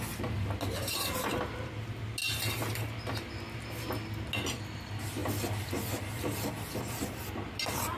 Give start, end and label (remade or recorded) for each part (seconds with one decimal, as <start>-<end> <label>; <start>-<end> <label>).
0.0-8.0 recorded